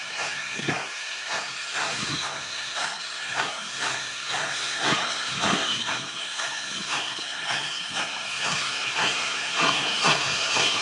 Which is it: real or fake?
fake